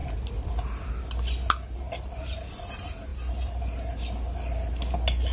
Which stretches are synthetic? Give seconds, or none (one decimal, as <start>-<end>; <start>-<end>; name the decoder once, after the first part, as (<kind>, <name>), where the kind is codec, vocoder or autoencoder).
0.0-0.5 (vocoder, BigVGAN v2); 3.1-3.6